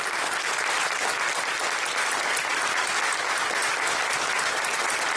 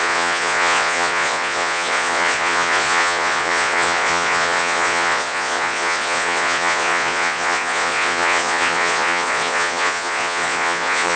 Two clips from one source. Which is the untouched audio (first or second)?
first